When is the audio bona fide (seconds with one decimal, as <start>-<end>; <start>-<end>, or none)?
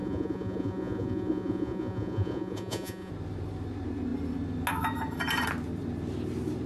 3.1-6.7